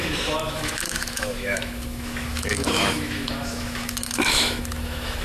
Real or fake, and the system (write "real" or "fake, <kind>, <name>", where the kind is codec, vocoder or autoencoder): fake, autoencoder, DAC-VAE